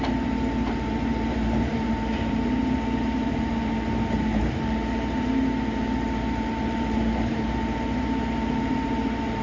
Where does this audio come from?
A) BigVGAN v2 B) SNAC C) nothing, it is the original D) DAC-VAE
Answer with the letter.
A